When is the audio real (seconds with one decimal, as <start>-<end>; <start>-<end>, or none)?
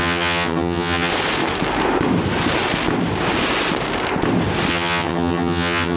1.1-4.7